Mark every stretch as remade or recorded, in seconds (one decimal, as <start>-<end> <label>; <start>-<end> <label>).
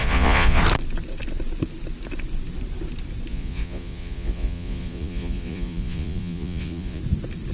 0.0-0.6 remade; 0.6-3.3 recorded; 3.3-7.0 remade; 7.0-7.5 recorded